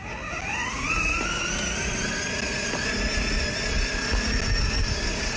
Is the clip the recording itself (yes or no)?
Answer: yes